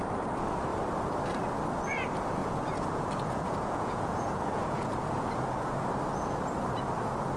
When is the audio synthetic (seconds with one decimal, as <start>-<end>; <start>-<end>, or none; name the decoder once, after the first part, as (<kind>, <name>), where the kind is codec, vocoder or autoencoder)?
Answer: 2.4-5.7 (vocoder, Vocos)